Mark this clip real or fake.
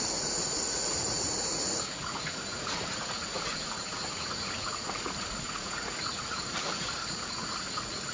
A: fake